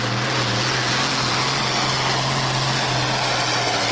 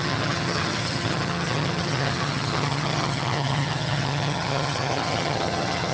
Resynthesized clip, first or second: second